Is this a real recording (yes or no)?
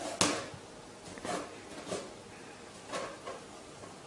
yes